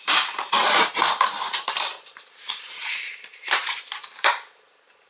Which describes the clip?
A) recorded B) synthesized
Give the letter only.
B